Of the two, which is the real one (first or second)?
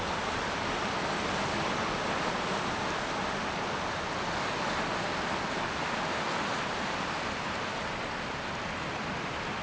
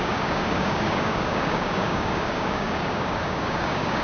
first